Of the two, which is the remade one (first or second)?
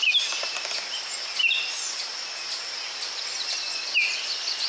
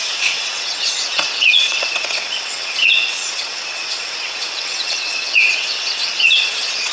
second